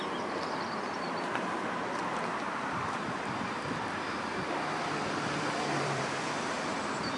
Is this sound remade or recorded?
remade